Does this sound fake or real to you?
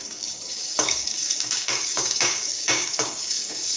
fake